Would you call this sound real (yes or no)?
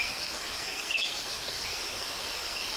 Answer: no